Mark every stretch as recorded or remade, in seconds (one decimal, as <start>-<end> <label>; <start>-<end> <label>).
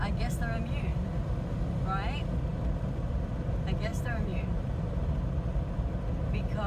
0.0-2.5 recorded; 2.5-3.1 remade; 3.1-3.9 recorded; 3.9-4.8 remade; 4.8-6.7 recorded